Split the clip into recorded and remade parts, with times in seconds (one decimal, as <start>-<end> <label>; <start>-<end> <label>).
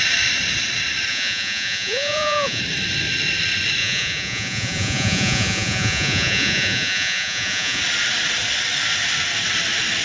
0.0-1.1 recorded; 1.1-2.6 remade; 2.6-3.8 recorded; 3.8-7.8 remade; 7.8-10.0 recorded